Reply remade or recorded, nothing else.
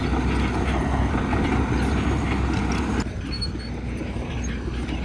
recorded